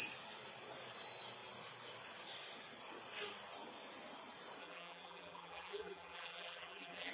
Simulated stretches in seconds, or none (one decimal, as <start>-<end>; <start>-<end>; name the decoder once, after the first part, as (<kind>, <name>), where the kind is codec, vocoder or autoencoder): 4.6-7.1 (vocoder, BigVGAN v2)